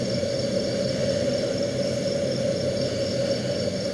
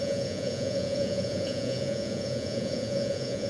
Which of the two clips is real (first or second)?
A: first